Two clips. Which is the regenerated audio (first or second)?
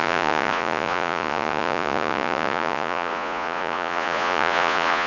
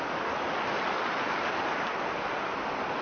first